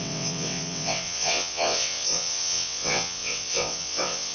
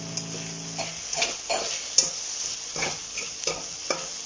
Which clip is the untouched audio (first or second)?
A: second